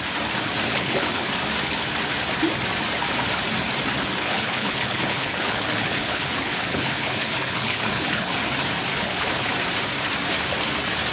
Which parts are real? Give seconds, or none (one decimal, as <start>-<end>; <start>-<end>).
0.0-0.7; 1.3-4.0; 8.3-8.9; 9.5-11.1